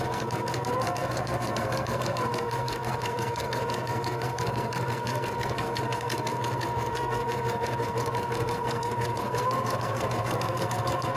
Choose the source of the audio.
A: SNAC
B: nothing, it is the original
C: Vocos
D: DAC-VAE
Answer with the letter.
A